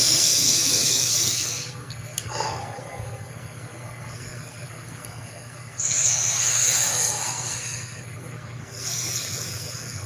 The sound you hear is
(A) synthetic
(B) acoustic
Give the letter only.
A